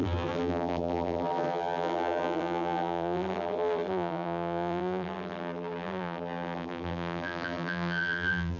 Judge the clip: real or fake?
fake